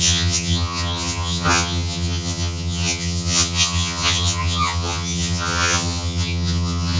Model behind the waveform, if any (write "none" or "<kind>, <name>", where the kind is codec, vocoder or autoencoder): vocoder, HiFi-GAN